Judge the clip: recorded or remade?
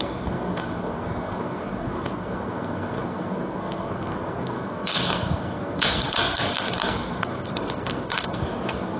remade